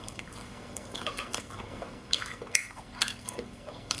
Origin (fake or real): fake